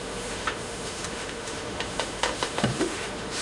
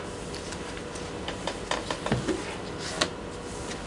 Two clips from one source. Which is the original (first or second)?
second